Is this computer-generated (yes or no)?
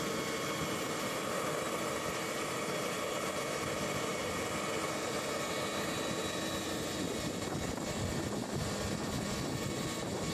no